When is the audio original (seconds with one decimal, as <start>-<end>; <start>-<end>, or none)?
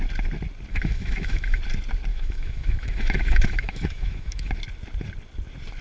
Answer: 0.0-0.7; 1.6-2.1; 4.5-5.8